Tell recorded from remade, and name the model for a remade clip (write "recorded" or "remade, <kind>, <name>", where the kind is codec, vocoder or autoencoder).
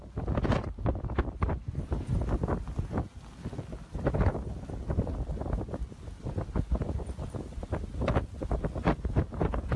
recorded